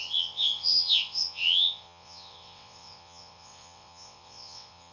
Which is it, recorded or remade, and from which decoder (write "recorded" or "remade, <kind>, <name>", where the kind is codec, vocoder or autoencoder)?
remade, vocoder, WaveNeXt